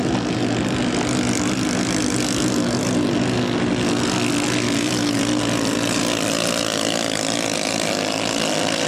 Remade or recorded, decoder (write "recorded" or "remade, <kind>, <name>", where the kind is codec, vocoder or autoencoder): recorded